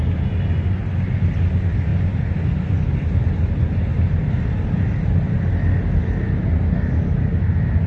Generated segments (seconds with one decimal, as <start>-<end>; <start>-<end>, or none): none